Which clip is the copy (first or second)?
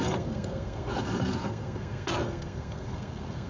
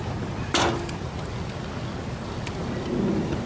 first